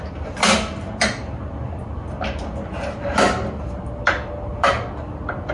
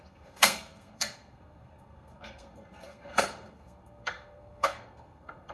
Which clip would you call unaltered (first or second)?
first